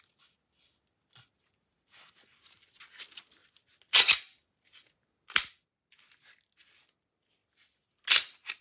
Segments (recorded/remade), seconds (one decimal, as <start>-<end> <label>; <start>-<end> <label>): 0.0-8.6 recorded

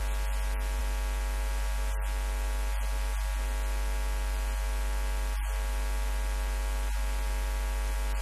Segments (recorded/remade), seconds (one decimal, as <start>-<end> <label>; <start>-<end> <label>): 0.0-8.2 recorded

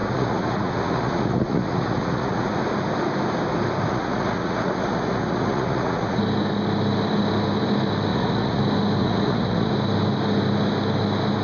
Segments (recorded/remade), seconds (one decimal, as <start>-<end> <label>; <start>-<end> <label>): 0.0-2.5 remade; 2.5-3.9 recorded; 3.9-6.2 remade; 6.2-8.1 recorded; 8.1-8.6 remade; 8.6-9.0 recorded; 9.0-9.7 remade; 9.7-11.4 recorded

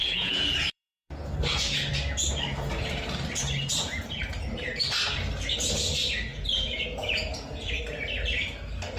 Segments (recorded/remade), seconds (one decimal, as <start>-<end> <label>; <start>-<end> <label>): 0.0-1.9 remade; 1.9-6.3 recorded; 6.3-7.8 remade; 7.8-9.0 recorded

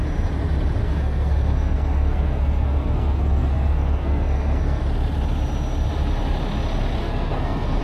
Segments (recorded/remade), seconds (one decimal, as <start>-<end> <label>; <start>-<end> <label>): 0.0-0.8 recorded; 0.8-4.8 remade; 4.8-7.0 recorded; 7.0-7.8 remade